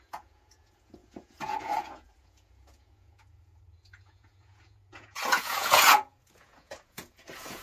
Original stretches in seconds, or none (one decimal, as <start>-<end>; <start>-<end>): none